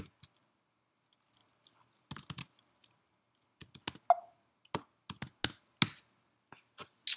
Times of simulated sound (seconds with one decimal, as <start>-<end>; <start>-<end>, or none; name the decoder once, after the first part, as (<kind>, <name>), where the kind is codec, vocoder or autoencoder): none